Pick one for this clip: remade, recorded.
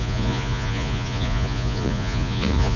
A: remade